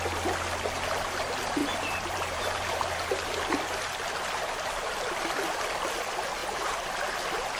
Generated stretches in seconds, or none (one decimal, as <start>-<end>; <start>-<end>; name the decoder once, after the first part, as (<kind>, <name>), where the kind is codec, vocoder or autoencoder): 1.6-3.5 (vocoder, BigVGAN v2)